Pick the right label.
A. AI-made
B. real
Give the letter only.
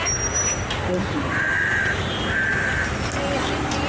B